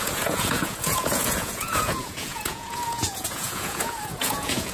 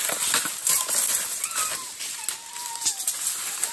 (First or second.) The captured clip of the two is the second